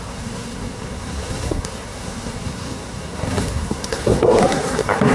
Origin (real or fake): fake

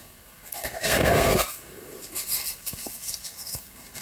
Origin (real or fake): fake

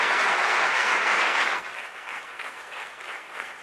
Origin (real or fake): fake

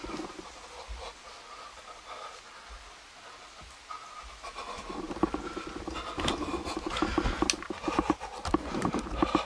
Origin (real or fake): real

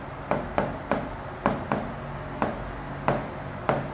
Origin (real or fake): real